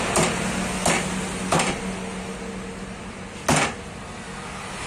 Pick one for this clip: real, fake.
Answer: real